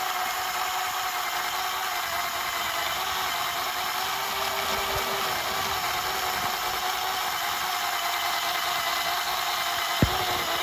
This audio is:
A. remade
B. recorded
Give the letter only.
B